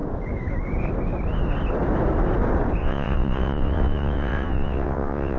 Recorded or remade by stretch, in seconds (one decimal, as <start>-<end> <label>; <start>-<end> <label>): 0.0-2.8 recorded; 2.8-5.4 remade